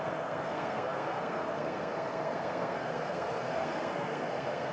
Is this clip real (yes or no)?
no